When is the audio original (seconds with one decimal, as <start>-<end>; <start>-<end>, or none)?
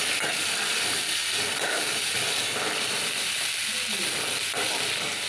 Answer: 0.0-5.3